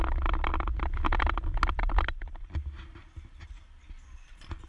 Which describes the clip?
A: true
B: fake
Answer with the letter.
A